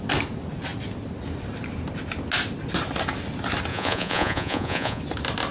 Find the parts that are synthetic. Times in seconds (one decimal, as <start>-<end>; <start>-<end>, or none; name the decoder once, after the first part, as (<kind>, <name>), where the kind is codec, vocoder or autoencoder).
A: 3.7-5.0 (vocoder, Vocos)